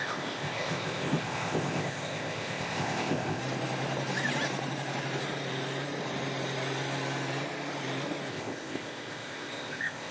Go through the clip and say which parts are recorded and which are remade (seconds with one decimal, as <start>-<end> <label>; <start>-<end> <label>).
0.0-3.4 remade; 3.4-8.3 recorded; 8.3-10.1 remade